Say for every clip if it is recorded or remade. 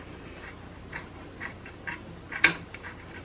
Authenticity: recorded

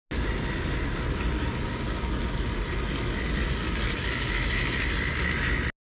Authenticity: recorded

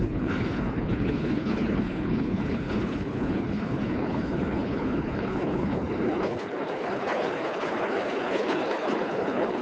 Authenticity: remade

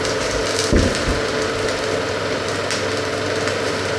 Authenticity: recorded